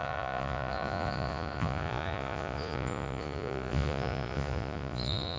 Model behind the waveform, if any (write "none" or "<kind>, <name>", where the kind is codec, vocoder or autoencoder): vocoder, Vocos